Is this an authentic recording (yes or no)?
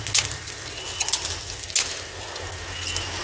yes